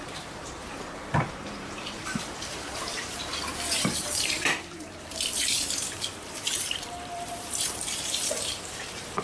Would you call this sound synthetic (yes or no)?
yes